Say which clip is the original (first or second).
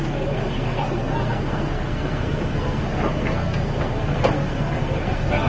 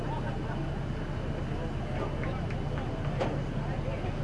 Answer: second